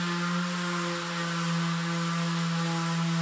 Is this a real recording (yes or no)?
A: yes